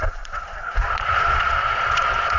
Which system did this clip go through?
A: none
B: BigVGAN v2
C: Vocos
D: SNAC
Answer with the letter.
C